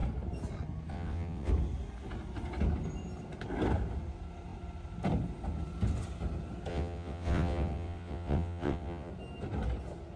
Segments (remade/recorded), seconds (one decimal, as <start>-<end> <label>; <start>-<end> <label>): 0.0-0.9 recorded; 0.9-1.5 remade; 1.5-6.7 recorded; 6.7-9.1 remade; 9.1-10.2 recorded